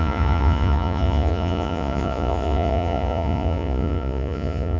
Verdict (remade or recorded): remade